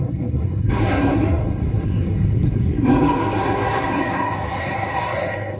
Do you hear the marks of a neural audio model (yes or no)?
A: yes